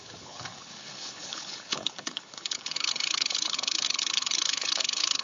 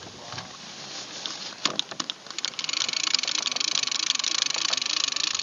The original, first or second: second